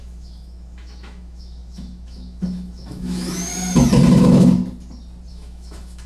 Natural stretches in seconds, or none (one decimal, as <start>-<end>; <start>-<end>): 3.5-4.1; 4.6-5.3